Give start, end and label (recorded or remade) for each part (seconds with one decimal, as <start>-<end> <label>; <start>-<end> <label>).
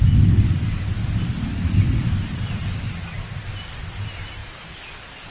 0.0-5.3 recorded